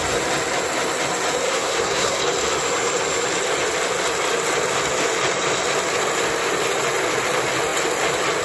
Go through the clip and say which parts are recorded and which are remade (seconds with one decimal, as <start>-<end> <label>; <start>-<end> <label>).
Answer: 0.0-1.5 recorded; 1.5-2.2 remade; 2.2-8.4 recorded